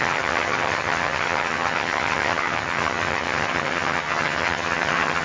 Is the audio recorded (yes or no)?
no